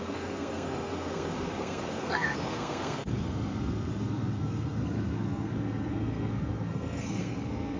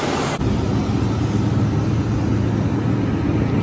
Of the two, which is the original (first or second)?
second